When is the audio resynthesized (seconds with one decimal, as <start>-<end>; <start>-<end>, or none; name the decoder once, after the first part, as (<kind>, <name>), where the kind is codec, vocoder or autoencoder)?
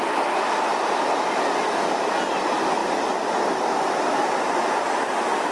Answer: none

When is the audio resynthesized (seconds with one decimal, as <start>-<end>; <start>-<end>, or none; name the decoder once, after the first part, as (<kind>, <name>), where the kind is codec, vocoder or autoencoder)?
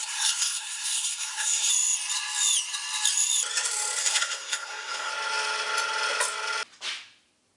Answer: 0.0-1.7 (codec, SNAC); 4.0-5.1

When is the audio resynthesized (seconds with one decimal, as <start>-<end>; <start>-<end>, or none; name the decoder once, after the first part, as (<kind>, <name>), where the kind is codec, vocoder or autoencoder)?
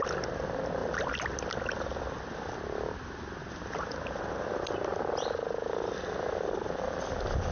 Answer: none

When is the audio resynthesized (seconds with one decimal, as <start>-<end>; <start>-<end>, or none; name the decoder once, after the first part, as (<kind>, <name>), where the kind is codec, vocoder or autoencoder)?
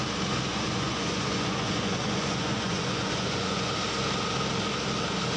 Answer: 0.5-3.7 (vocoder, Vocos)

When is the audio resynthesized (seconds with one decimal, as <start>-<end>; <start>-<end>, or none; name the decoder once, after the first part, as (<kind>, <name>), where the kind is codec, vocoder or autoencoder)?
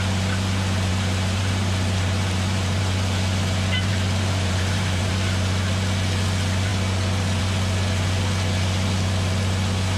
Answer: 0.9-2.8 (vocoder, BigVGAN v2); 3.9-5.1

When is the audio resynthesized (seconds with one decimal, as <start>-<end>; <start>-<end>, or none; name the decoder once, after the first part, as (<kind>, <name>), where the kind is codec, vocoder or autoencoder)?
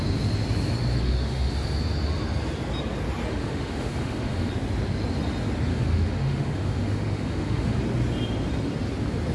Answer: 1.0-1.5 (autoencoder, DAC-VAE); 3.3-4.5; 5.7-7.8